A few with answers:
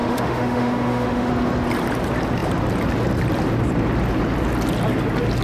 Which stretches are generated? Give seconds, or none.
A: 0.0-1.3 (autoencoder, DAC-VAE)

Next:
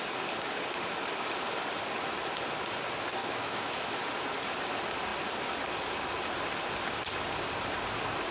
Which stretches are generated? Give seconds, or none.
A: 3.2-4.0 (autoencoder, DAC-VAE)

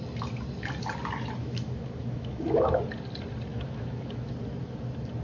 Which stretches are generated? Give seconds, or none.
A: 1.4-2.8 (autoencoder, DAC-VAE); 3.5-4.3

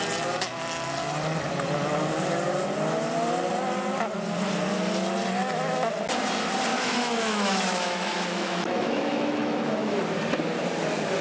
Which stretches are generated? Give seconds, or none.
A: 5.4-5.9 (autoencoder, DAC-VAE); 6.7-10.0

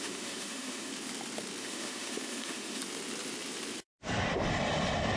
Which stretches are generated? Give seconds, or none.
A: 0.0-0.9 (autoencoder, DAC-VAE); 1.6-2.8